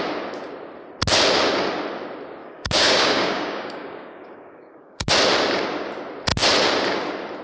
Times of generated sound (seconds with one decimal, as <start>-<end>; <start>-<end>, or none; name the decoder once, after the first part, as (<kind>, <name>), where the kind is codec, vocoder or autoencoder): 2.4-5.1 (codec, DAC)